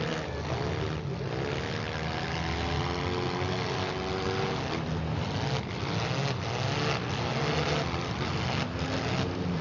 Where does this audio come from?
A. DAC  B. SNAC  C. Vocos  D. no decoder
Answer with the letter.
D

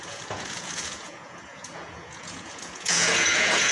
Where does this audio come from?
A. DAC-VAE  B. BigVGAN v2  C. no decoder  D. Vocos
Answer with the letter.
D